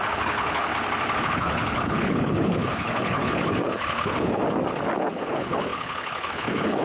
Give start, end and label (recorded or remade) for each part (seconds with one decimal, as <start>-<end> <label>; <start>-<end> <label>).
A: 0.0-0.7 remade; 0.7-1.2 recorded; 1.2-4.4 remade; 4.4-5.0 recorded; 5.0-6.8 remade